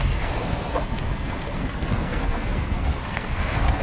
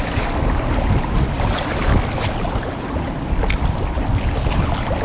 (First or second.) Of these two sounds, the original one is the second